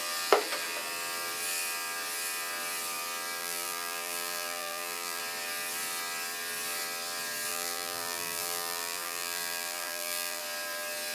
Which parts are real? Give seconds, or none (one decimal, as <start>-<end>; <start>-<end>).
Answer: 0.0-3.4; 5.2-7.5; 10.4-11.1